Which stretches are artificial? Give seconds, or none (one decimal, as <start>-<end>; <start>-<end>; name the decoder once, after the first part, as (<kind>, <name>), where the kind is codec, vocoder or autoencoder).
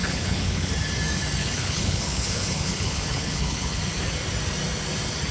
0.0-0.7 (codec, HILCodec); 1.4-3.8